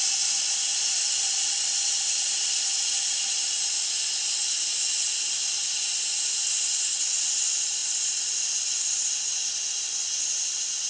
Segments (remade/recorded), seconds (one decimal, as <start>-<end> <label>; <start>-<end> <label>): 0.0-10.9 recorded